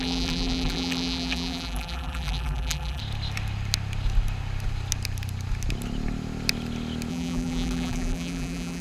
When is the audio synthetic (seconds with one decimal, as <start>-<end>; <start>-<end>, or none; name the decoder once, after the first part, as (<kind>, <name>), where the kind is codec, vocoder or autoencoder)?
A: 0.0-3.0 (vocoder, BigVGAN v2); 7.1-8.8